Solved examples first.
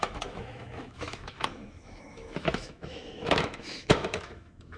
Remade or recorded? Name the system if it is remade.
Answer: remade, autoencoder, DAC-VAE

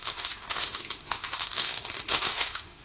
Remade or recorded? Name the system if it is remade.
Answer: remade, autoencoder, DAC-VAE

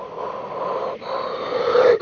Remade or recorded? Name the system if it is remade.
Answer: recorded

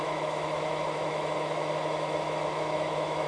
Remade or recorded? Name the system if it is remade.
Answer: remade, autoencoder, DAC-VAE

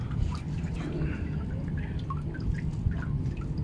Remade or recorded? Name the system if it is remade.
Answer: recorded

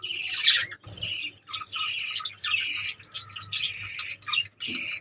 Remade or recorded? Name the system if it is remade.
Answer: recorded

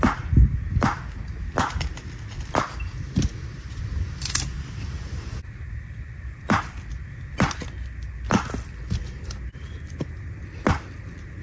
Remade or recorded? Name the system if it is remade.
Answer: recorded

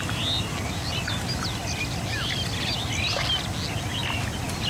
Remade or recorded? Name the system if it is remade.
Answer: recorded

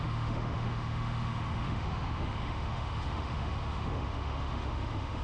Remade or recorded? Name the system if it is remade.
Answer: remade, autoencoder, DAC-VAE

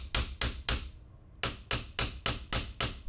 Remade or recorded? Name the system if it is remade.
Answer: recorded